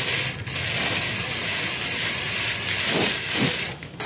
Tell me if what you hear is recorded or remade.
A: recorded